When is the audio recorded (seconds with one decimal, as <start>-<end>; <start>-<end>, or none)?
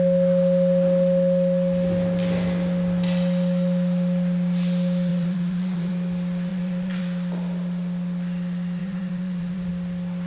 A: 0.0-5.1; 5.9-6.5; 7.0-8.8; 9.7-10.3